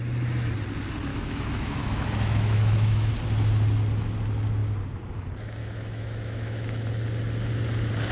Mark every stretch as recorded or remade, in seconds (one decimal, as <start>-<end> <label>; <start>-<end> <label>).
0.0-1.1 recorded; 1.1-3.1 remade; 3.1-5.6 recorded; 5.6-6.9 remade; 6.9-8.1 recorded